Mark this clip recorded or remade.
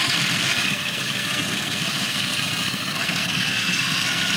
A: remade